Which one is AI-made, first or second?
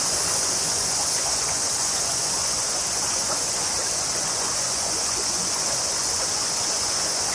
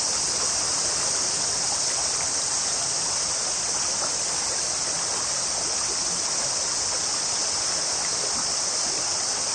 first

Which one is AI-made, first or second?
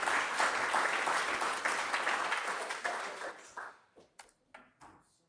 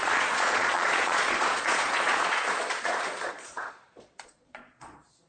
second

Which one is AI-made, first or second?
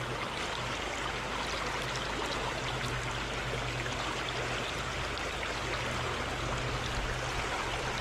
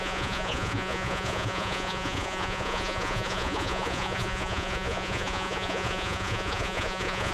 second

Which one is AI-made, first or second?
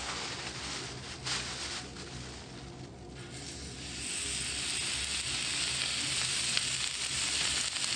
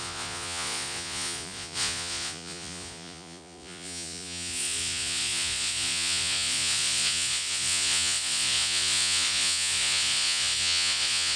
second